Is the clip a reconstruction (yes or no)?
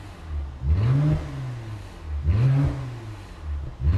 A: no